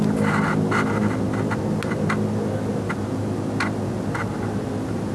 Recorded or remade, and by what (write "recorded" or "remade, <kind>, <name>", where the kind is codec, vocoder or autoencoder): recorded